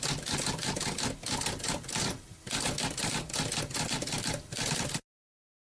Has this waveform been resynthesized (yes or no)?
no